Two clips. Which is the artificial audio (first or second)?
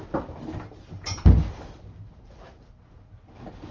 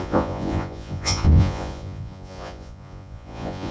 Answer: second